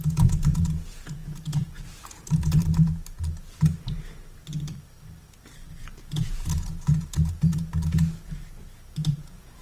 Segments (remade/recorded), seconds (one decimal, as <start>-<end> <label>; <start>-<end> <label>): 0.0-2.6 remade; 2.6-5.8 recorded; 5.8-7.7 remade; 7.7-9.1 recorded; 9.1-9.6 remade